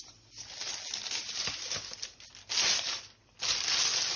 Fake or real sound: real